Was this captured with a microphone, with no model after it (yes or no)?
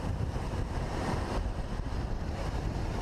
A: no